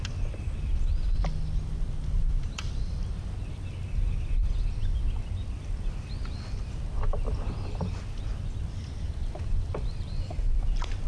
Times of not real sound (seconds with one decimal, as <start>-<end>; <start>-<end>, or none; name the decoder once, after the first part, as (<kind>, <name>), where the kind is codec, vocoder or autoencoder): 4.8-6.1 (vocoder, BigVGAN v2)